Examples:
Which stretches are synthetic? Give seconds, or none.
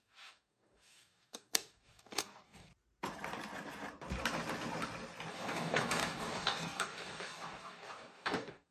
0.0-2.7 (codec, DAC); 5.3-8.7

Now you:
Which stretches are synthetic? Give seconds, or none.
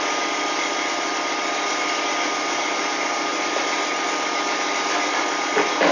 none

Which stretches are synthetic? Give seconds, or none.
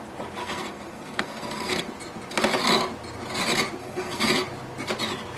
0.4-1.8 (codec, SNAC); 3.8-4.3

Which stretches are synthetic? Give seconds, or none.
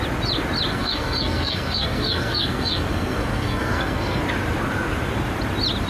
0.7-4.2 (codec, SNAC)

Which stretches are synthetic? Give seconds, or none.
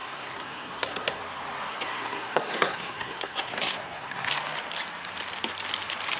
0.0-1.2 (codec, SNAC); 1.7-4.3